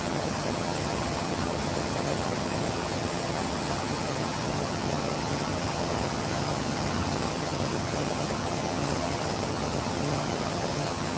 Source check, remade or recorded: remade